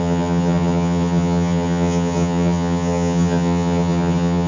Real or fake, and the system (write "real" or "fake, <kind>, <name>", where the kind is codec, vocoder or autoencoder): fake, vocoder, HiFi-GAN